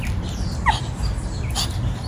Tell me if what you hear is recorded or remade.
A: recorded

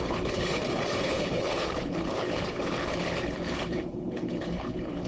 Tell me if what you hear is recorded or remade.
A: remade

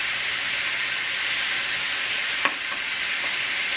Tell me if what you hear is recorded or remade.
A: recorded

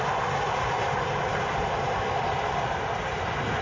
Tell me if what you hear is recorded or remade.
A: recorded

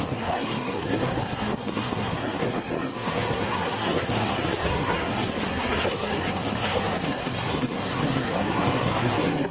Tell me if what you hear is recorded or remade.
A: remade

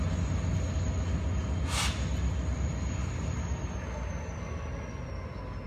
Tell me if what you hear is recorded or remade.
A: recorded